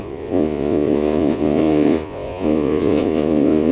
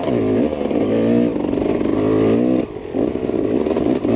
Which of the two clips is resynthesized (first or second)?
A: first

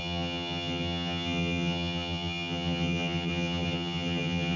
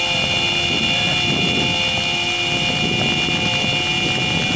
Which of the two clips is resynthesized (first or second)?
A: first